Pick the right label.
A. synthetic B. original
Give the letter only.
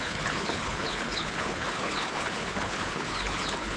A